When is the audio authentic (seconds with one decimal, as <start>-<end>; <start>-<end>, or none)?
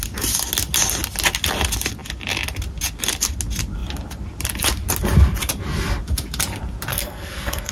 0.0-6.9